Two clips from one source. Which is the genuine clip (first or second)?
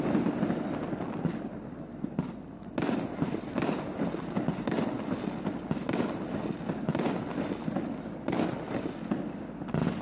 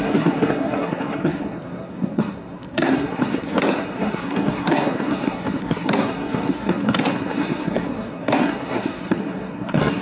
first